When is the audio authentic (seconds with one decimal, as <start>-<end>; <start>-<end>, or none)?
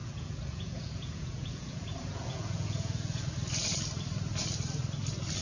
3.2-5.4